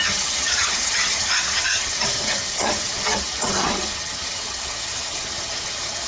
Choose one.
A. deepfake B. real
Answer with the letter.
A